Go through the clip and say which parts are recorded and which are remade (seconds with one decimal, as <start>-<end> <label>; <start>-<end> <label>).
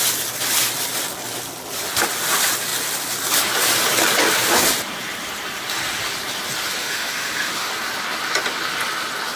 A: 0.0-6.8 recorded; 6.8-7.7 remade; 7.7-9.4 recorded